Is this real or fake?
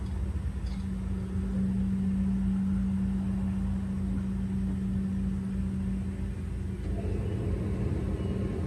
real